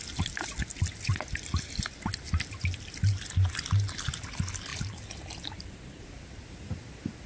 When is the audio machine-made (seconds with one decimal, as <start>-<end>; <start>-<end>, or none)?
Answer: none